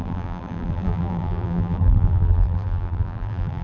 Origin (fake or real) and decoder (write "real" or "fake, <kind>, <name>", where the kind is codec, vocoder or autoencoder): fake, vocoder, BigVGAN v2